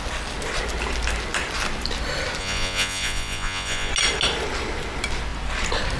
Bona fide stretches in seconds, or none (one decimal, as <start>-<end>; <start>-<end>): 0.0-2.4; 3.9-6.0